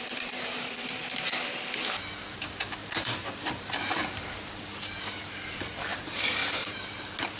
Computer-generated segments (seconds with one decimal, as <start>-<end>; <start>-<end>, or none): 0.0-1.0; 2.2-7.4